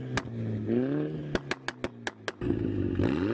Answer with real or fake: real